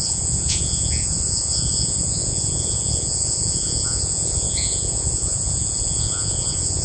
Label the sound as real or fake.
fake